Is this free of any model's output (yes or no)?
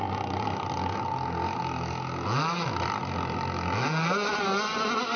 yes